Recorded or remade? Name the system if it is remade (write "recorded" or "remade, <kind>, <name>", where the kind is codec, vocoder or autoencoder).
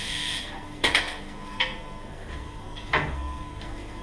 remade, codec, SNAC